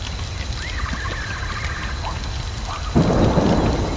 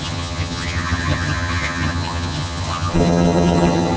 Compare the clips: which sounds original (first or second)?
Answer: first